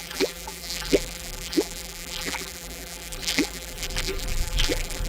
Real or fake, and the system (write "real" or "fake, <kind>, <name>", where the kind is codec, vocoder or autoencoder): fake, vocoder, BigVGAN v2